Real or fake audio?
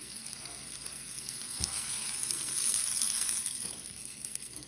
fake